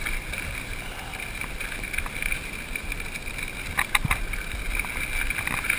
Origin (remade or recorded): recorded